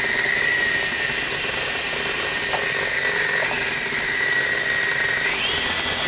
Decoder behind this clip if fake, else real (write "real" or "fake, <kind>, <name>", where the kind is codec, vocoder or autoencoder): real